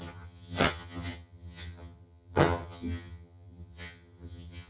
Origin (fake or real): fake